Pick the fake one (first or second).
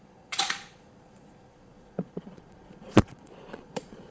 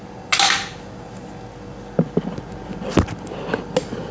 first